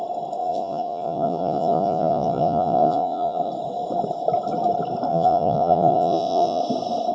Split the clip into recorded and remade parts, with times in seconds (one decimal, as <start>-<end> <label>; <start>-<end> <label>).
0.0-0.4 recorded; 0.4-3.5 remade; 3.5-5.1 recorded; 5.1-6.6 remade; 6.6-7.1 recorded